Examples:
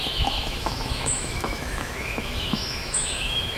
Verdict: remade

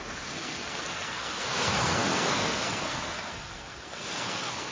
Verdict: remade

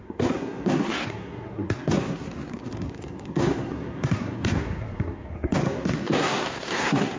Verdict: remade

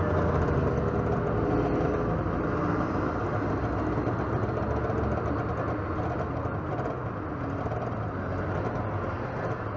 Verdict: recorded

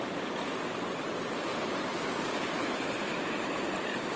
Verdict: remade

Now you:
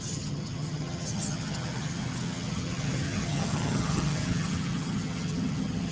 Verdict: remade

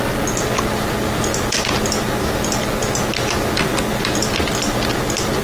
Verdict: recorded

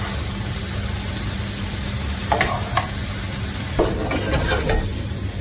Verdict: recorded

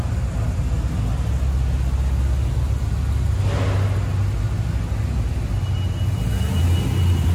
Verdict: recorded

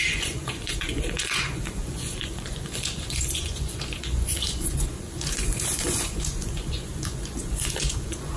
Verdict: remade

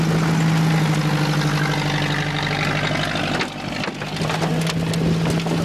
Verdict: recorded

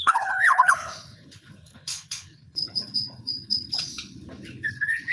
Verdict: remade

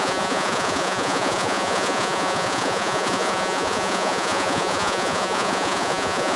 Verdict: remade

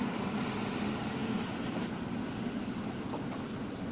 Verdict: recorded